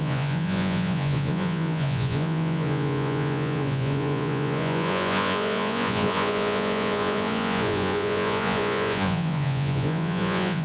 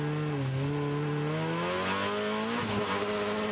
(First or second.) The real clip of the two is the second